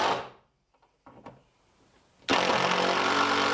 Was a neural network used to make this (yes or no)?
no